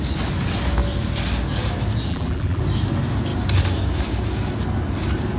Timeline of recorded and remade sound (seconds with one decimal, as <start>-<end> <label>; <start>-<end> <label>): 0.0-2.1 recorded; 2.1-2.6 remade; 2.6-5.4 recorded